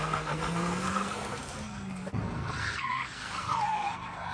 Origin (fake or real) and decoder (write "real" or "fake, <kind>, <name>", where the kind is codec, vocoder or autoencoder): fake, codec, SNAC